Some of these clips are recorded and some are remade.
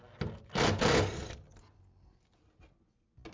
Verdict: recorded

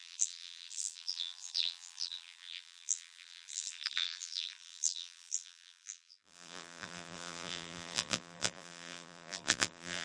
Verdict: remade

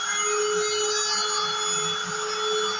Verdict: recorded